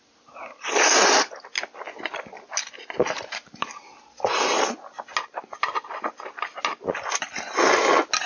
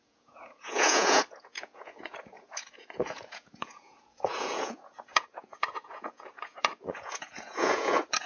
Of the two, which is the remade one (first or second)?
second